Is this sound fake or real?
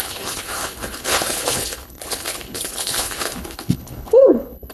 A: fake